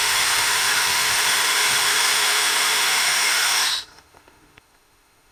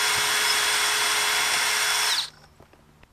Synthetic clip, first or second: first